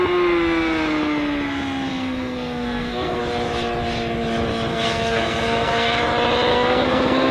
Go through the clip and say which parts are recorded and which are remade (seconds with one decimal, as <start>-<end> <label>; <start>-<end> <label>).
0.0-1.9 recorded; 1.9-3.2 remade; 3.2-4.7 recorded; 4.7-6.0 remade; 6.0-6.5 recorded; 6.5-7.3 remade